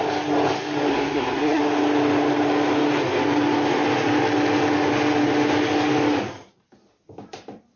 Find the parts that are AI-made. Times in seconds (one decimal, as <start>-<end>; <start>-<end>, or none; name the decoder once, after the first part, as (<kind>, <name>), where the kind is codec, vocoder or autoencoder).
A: 0.9-1.6 (codec, SNAC)